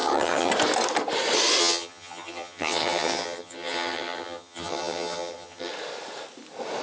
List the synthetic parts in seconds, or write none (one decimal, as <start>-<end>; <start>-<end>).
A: 0.0-0.5; 1.6-5.7